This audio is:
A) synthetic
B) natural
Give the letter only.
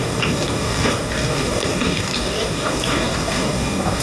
A